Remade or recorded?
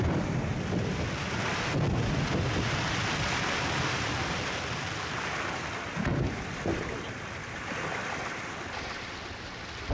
recorded